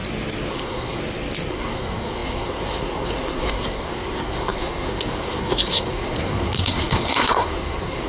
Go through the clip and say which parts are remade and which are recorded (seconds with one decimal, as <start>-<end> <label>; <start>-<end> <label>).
0.0-0.5 recorded; 0.5-1.0 remade; 1.0-1.5 recorded; 1.5-8.1 remade